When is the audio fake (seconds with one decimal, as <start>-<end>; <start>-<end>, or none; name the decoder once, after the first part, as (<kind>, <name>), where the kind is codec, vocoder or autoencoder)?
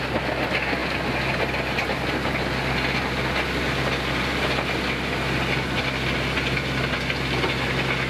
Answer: none